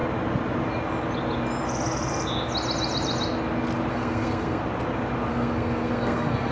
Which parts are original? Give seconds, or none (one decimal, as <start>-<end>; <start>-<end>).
0.0-3.9; 4.6-5.3